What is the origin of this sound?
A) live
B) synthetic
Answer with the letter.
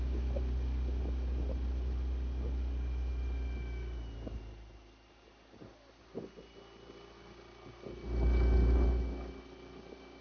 A